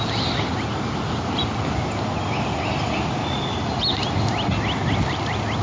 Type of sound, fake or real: real